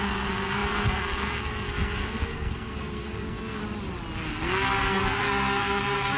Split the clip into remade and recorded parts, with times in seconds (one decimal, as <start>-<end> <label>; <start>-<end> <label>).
0.0-3.6 remade; 3.6-4.3 recorded; 4.3-6.2 remade